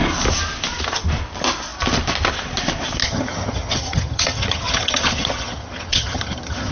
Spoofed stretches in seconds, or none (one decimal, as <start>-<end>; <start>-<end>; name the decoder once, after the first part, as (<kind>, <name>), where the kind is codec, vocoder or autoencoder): 3.0-6.7 (vocoder, HiFi-GAN)